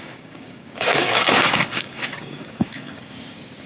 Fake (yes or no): yes